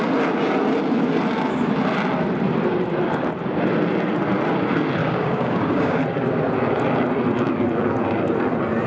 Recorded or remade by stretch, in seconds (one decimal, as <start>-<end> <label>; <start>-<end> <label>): 0.0-5.0 recorded; 5.0-6.0 remade; 6.0-8.9 recorded